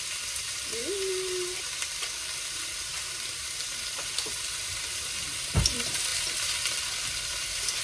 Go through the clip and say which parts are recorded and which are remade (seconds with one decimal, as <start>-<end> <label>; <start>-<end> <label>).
0.0-0.8 remade; 0.8-3.3 recorded; 3.3-7.8 remade